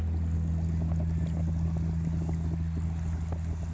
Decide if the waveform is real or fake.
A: real